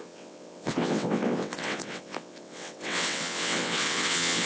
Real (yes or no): no